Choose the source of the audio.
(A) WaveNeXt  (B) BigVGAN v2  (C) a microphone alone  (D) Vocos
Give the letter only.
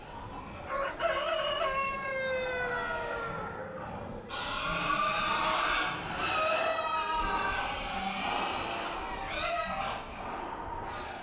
C